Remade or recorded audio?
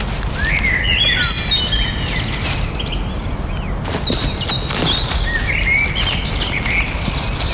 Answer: recorded